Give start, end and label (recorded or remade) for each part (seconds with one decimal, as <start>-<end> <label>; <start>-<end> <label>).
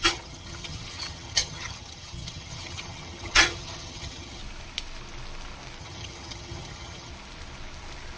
0.0-4.4 remade; 4.4-5.8 recorded; 5.8-7.1 remade; 7.1-8.2 recorded